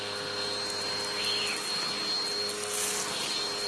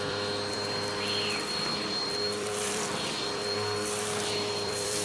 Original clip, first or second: first